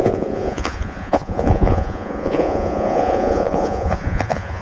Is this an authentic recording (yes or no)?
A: no